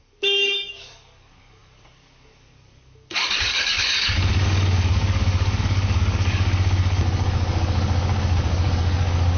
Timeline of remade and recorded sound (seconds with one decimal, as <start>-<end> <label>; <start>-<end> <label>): 0.0-9.4 remade